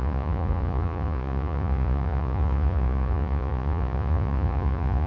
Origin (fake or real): fake